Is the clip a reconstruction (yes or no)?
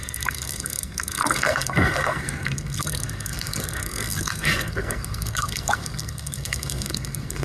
yes